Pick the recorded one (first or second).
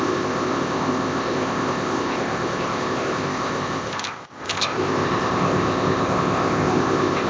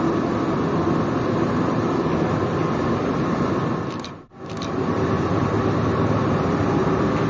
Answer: second